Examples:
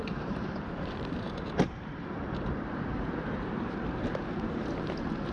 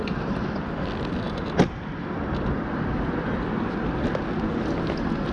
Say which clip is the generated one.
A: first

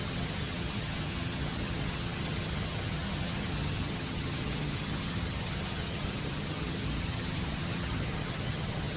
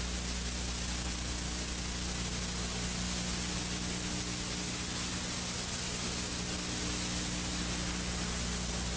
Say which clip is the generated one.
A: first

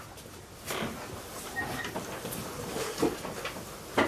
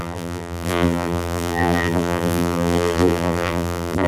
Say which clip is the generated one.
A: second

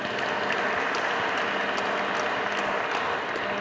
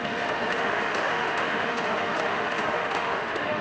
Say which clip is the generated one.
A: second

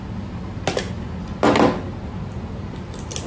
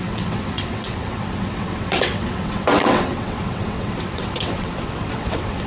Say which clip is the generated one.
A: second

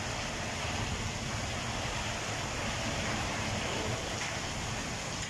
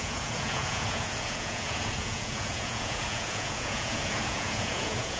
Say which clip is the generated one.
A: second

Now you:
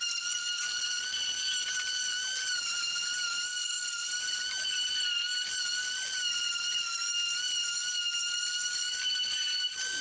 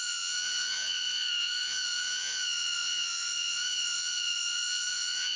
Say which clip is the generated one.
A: second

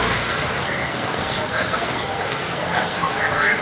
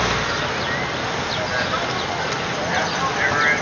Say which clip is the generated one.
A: first